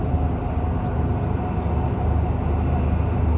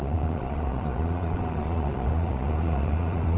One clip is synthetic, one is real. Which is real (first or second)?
first